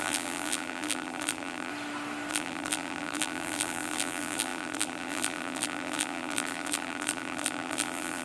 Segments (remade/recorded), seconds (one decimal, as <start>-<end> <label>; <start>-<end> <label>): 0.0-1.7 remade; 1.7-2.3 recorded; 2.3-8.2 remade